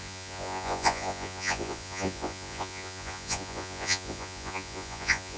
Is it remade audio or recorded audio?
remade